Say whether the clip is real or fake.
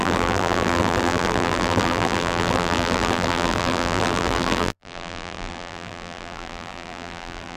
fake